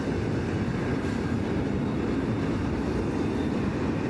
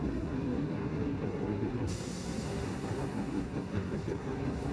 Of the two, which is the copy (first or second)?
second